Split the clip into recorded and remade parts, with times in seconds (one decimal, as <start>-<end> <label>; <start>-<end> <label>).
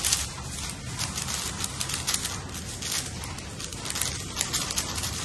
0.0-3.7 recorded; 3.7-5.2 remade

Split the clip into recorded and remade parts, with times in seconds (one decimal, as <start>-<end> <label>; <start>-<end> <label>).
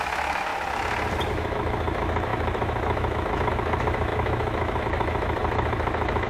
0.0-0.5 remade; 0.5-1.3 recorded; 1.3-6.3 remade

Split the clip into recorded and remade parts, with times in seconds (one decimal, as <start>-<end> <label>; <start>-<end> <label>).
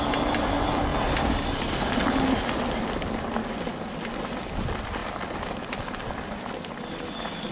0.0-7.5 recorded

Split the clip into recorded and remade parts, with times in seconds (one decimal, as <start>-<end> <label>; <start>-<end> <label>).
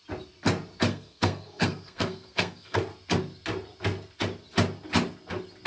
0.0-0.9 recorded; 0.9-2.8 remade; 2.8-5.7 recorded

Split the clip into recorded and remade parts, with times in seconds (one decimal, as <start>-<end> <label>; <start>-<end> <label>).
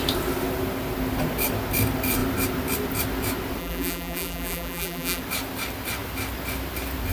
0.0-3.6 recorded; 3.6-5.2 remade; 5.2-7.1 recorded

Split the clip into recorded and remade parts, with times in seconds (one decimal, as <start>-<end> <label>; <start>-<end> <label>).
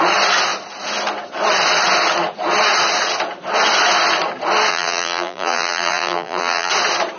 0.0-4.7 recorded; 4.7-6.7 remade; 6.7-7.2 recorded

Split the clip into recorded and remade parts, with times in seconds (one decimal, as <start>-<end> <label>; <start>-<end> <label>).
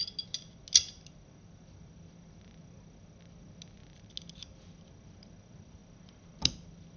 0.0-7.0 recorded